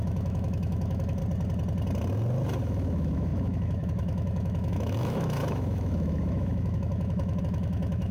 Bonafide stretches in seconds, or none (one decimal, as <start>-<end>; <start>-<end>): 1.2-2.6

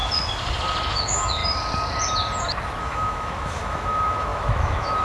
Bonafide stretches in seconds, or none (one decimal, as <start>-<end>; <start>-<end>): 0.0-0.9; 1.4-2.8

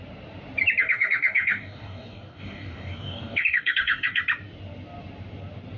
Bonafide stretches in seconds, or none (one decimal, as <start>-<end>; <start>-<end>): 0.0-0.8; 4.2-5.8

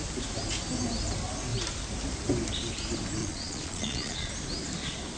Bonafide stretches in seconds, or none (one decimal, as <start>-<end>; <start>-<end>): 0.0-3.2; 4.3-5.2